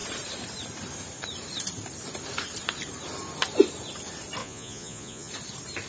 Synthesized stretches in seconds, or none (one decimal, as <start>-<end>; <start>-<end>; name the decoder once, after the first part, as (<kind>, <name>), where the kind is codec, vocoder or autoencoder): 4.4-5.3 (vocoder, Vocos)